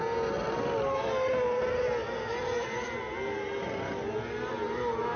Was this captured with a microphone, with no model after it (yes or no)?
yes